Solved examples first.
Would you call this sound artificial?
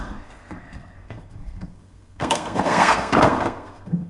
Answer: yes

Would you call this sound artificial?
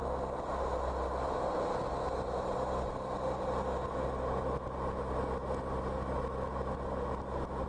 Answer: no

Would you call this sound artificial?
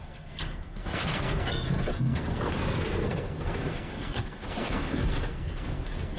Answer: yes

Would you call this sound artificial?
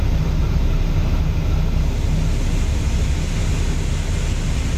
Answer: no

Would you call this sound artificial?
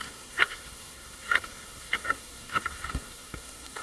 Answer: yes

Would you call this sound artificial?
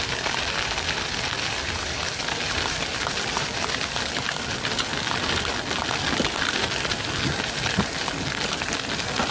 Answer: no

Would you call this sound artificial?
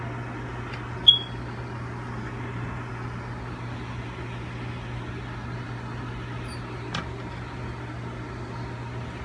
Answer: no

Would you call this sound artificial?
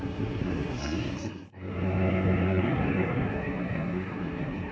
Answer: yes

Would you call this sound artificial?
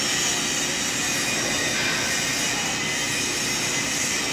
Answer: no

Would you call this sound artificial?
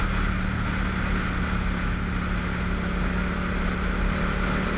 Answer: no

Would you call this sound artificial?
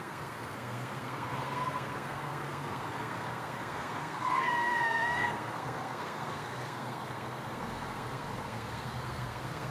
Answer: yes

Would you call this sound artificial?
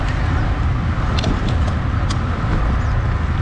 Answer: no